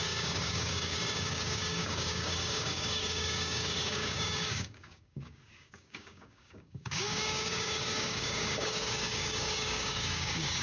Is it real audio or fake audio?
fake